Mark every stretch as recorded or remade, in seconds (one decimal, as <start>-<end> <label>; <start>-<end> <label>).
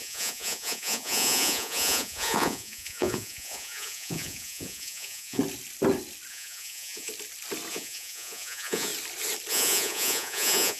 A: 0.0-5.4 remade; 5.4-6.3 recorded; 6.3-7.1 remade; 7.1-7.7 recorded; 7.7-8.9 remade; 8.9-9.5 recorded; 9.5-10.8 remade